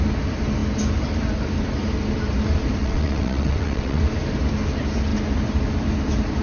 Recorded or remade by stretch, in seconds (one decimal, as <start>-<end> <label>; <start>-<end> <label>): 0.0-2.8 recorded; 2.8-4.0 remade; 4.0-6.4 recorded